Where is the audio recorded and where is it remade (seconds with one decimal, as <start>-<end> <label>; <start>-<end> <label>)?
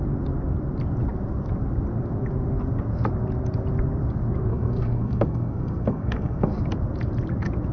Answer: 0.0-4.5 recorded; 4.5-6.6 remade; 6.6-7.7 recorded